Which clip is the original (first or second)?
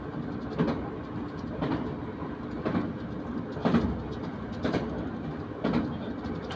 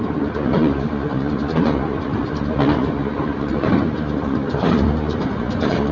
first